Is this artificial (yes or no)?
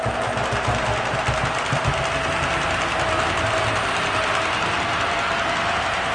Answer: no